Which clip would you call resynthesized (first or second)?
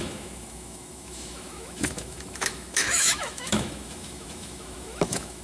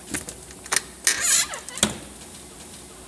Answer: first